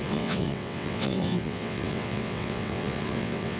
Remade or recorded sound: remade